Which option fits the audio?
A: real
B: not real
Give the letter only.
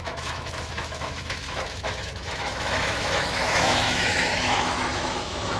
B